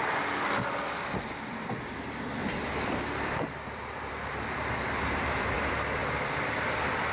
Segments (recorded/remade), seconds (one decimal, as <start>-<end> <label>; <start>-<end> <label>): 0.0-2.4 recorded; 2.4-5.5 remade; 5.5-6.0 recorded; 6.0-7.1 remade

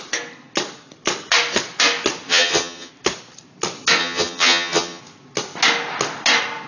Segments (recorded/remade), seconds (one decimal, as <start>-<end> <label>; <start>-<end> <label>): 0.0-2.3 recorded; 2.3-2.9 remade; 2.9-4.0 recorded; 4.0-5.0 remade; 5.0-6.7 recorded

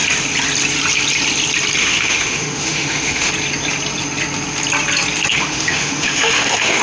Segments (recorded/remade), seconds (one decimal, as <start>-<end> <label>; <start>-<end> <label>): 0.0-1.8 recorded; 1.8-3.3 remade; 3.3-5.3 recorded; 5.3-6.8 remade

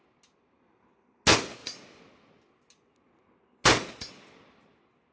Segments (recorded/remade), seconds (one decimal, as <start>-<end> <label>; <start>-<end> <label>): 0.0-5.1 recorded

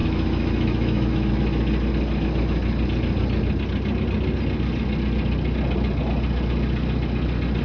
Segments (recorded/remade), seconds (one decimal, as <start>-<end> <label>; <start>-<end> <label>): 0.0-1.3 remade; 1.3-7.6 recorded

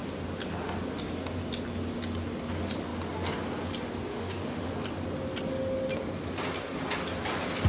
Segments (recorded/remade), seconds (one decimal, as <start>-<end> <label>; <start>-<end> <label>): 0.0-4.1 recorded; 4.1-4.7 remade; 4.7-7.7 recorded

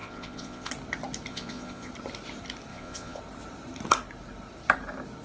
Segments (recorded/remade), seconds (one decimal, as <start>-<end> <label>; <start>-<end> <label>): 0.0-0.7 remade; 0.7-1.3 recorded; 1.3-1.9 remade; 1.9-2.7 recorded; 2.7-3.2 remade; 3.2-5.2 recorded

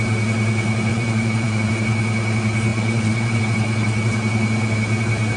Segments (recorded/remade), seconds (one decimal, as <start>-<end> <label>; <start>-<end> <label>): 0.0-0.9 recorded; 0.9-1.7 remade; 1.7-2.7 recorded; 2.7-3.4 remade; 3.4-5.4 recorded